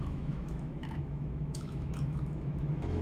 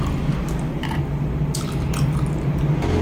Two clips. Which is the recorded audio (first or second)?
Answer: second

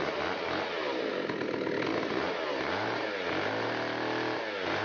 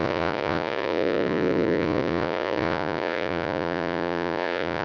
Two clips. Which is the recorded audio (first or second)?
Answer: first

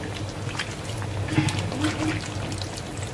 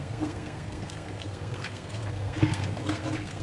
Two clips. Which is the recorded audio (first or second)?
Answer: first